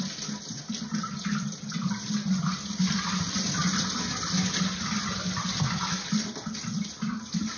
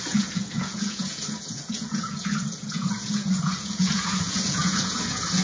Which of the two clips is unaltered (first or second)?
first